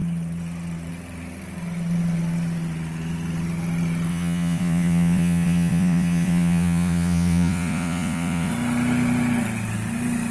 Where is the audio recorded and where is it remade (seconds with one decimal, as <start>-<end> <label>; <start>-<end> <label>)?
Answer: 0.0-4.1 recorded; 4.1-8.5 remade; 8.5-10.3 recorded

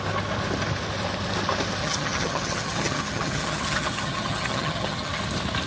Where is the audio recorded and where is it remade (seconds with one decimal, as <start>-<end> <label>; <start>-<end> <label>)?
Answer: 0.0-1.8 recorded; 1.8-5.2 remade; 5.2-5.7 recorded

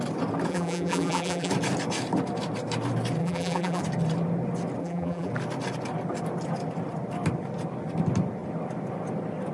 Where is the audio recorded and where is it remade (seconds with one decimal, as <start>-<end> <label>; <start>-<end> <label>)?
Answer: 0.0-0.5 recorded; 0.5-1.5 remade; 1.5-3.2 recorded; 3.2-3.8 remade; 3.8-4.8 recorded; 4.8-5.3 remade; 5.3-9.5 recorded

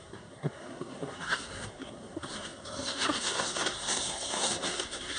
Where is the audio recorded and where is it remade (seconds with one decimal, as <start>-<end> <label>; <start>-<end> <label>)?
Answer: 0.0-5.2 remade

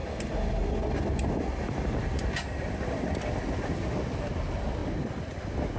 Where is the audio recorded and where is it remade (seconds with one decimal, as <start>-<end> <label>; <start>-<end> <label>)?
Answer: 0.0-5.8 recorded

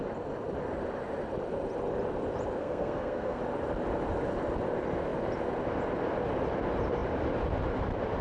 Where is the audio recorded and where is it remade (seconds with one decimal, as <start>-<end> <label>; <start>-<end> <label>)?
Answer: 0.0-2.6 recorded; 2.6-3.4 remade; 3.4-8.2 recorded